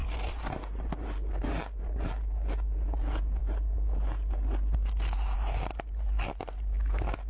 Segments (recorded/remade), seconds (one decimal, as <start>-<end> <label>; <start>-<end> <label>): 0.0-7.3 recorded